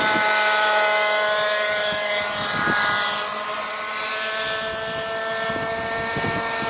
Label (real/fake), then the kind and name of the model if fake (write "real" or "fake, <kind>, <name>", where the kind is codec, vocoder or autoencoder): real